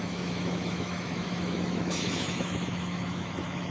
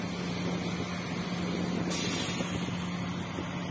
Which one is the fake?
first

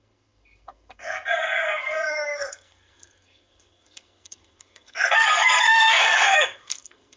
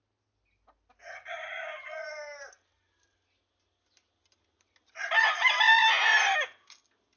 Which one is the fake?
first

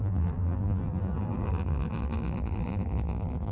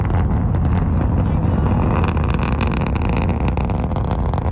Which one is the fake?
first